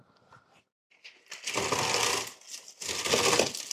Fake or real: real